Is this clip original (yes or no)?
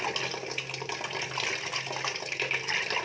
yes